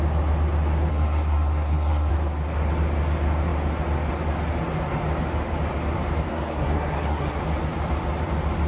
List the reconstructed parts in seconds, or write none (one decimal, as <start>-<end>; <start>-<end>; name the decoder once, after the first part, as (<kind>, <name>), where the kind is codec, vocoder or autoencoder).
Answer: 0.9-2.1 (codec, SNAC); 6.3-7.4